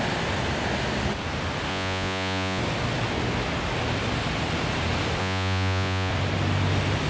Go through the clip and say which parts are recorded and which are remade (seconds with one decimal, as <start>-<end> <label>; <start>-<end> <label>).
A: 0.0-1.7 recorded; 1.7-2.6 remade; 2.6-5.2 recorded; 5.2-6.1 remade; 6.1-7.1 recorded